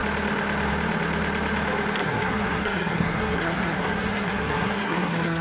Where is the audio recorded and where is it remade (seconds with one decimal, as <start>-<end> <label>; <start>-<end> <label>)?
0.0-2.0 recorded; 2.0-5.4 remade